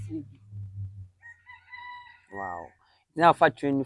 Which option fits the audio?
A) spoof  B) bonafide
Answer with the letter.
B